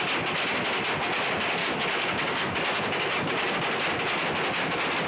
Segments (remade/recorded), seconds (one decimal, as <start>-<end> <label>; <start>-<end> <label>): 0.0-1.6 recorded; 1.6-3.5 remade; 3.5-5.1 recorded